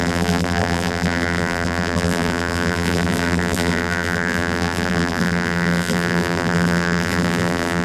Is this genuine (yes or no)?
no